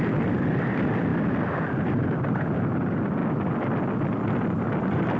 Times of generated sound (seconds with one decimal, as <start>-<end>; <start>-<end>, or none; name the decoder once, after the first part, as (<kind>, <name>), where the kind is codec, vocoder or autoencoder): none